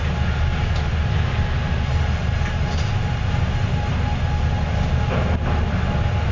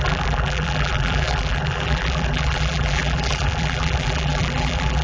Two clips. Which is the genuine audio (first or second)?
first